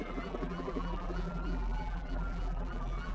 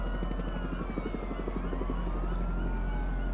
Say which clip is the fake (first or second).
first